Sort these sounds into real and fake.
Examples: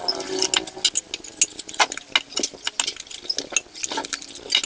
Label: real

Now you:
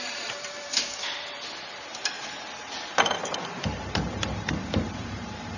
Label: fake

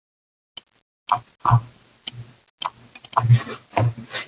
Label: real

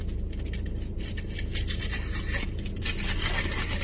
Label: real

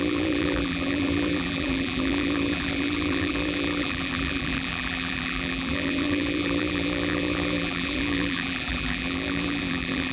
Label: fake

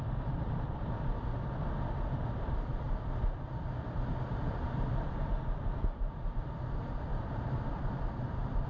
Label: fake